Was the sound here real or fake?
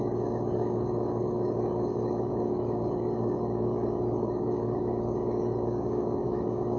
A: fake